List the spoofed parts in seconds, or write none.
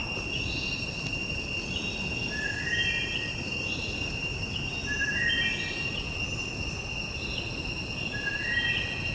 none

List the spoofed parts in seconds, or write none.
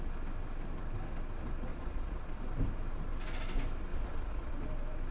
1.7-2.4 (vocoder, Vocos); 3.9-4.5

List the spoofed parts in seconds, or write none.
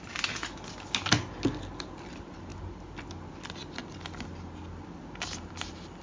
none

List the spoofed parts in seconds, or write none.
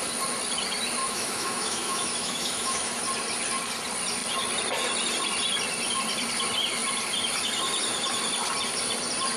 1.0-3.0 (autoencoder, DAC-VAE)